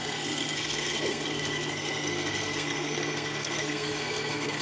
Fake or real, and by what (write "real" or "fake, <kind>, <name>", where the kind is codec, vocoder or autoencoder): fake, codec, SNAC